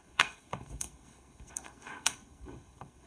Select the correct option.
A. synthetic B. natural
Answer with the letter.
A